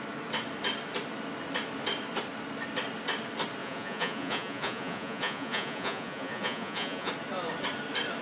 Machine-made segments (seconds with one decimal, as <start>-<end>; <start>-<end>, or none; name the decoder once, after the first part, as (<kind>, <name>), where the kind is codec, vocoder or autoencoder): 3.6-7.1 (vocoder, Vocos)